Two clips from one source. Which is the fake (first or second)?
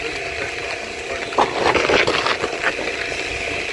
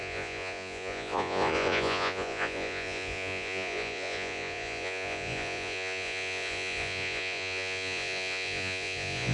second